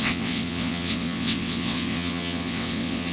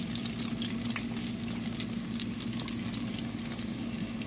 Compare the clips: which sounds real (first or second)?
second